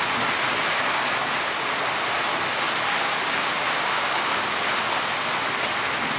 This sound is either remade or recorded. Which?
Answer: recorded